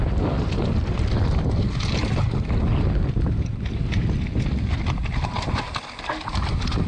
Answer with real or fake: real